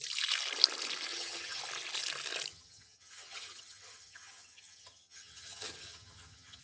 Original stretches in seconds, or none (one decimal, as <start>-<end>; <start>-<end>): 0.0-1.1; 1.6-2.5